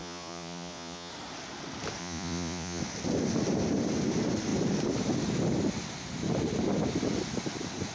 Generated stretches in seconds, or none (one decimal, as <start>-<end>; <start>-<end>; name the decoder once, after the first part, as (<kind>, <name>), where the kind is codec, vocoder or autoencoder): 0.0-1.1 (vocoder, Vocos); 2.0-2.8